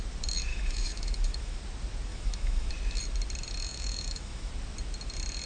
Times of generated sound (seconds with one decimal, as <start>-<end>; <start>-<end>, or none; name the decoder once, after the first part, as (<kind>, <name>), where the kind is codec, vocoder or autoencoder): 0.5-1.6 (autoencoder, DAC-VAE); 2.1-2.7; 3.7-4.5